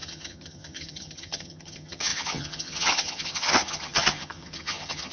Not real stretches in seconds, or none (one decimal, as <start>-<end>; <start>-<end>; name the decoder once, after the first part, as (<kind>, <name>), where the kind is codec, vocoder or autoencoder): 0.0-5.1 (vocoder, HiFi-GAN)